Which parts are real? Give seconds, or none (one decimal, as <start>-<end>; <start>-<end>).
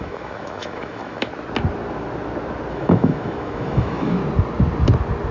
1.3-2.7; 4.2-5.3